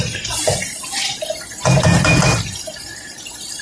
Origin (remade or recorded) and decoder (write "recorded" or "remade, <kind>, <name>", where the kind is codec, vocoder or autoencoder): remade, vocoder, BigVGAN v2